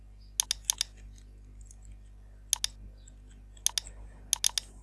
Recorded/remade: recorded